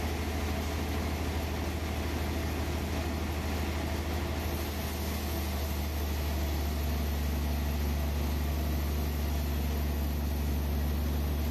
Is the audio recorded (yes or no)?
yes